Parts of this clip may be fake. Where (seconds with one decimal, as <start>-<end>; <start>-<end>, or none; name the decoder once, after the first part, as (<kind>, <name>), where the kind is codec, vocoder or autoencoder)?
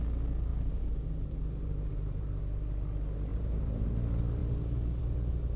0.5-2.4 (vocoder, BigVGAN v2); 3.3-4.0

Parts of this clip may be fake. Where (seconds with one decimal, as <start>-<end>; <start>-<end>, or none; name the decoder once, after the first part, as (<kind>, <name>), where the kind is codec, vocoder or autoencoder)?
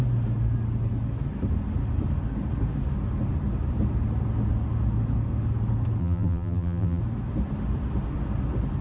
6.0-7.0 (vocoder, BigVGAN v2)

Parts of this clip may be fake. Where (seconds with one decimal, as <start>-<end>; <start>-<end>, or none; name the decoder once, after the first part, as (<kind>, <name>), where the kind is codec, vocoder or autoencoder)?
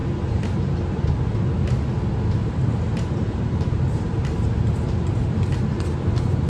0.0-1.1 (vocoder, BigVGAN v2); 2.4-6.5